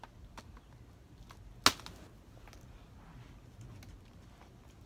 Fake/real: real